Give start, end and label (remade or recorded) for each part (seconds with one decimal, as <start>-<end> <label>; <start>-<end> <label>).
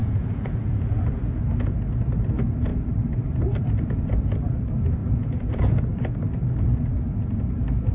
0.0-1.4 remade; 1.4-5.0 recorded; 5.0-5.8 remade; 5.8-7.9 recorded